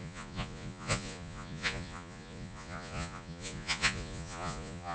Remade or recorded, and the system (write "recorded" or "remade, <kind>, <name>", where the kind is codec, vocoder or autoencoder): remade, vocoder, Vocos